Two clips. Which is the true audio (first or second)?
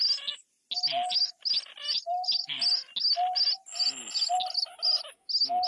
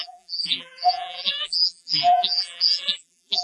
first